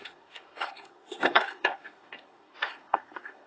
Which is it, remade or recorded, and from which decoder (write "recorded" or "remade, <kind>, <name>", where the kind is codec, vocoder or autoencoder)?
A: remade, codec, SNAC